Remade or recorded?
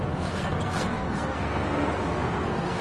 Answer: remade